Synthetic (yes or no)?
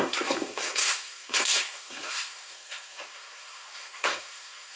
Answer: yes